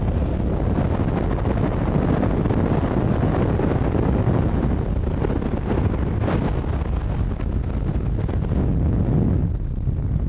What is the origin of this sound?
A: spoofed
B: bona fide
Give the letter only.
B